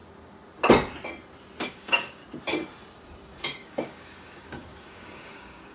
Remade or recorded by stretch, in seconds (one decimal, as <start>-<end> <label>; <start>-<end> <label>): 0.0-1.7 recorded; 1.7-2.2 remade; 2.2-3.3 recorded; 3.3-5.7 remade